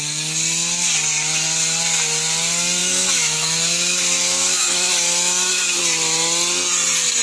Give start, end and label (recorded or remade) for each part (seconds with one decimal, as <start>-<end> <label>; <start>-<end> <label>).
0.0-2.8 recorded; 2.8-5.8 remade; 5.8-7.2 recorded